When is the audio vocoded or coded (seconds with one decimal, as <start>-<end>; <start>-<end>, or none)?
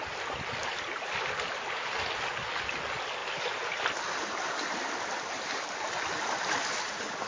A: none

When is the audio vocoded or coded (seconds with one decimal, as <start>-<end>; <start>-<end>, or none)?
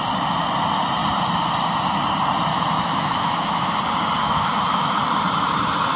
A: 2.5-3.7; 4.2-5.0